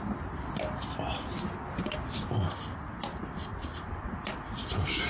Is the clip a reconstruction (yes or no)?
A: no